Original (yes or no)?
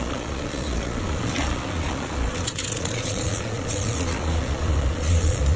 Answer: no